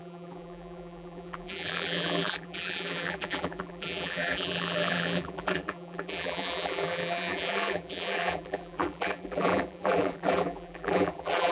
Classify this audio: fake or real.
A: fake